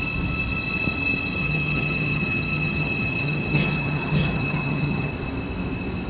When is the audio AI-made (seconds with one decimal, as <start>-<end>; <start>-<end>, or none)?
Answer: 1.4-5.1